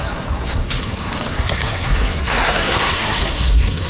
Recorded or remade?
remade